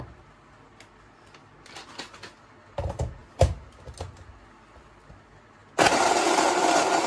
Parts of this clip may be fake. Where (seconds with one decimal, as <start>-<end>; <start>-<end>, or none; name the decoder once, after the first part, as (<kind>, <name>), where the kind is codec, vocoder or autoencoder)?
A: none